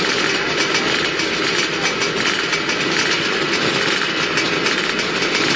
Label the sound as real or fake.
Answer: real